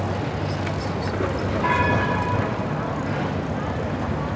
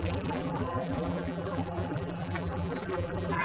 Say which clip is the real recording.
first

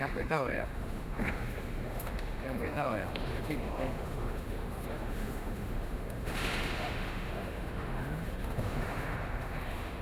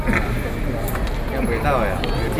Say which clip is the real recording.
second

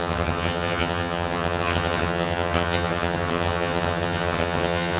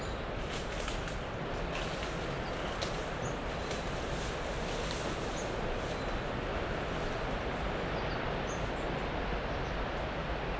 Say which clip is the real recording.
second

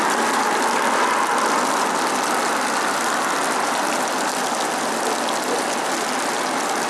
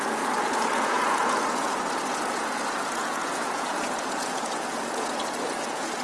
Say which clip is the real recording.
first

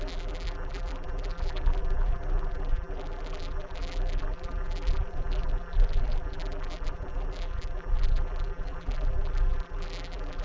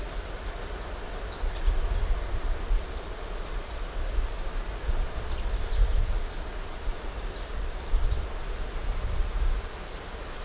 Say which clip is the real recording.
second